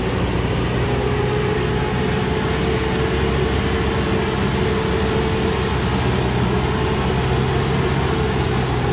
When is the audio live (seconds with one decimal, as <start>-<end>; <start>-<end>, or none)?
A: 0.0-8.9